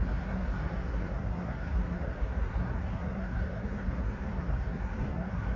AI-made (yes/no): yes